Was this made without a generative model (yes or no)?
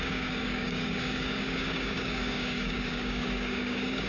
no